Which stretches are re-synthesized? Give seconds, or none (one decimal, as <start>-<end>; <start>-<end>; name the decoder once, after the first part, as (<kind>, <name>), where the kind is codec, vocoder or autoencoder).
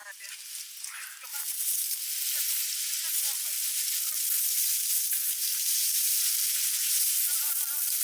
0.0-2.0 (vocoder, BigVGAN v2); 4.7-7.6